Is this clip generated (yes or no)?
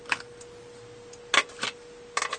no